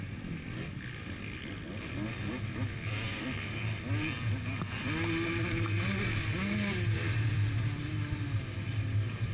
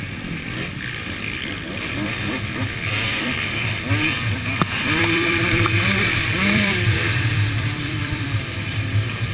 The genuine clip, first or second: first